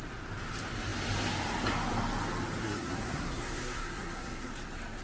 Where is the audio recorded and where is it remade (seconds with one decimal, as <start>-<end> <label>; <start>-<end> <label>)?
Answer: 0.0-2.6 recorded; 2.6-4.5 remade; 4.5-5.0 recorded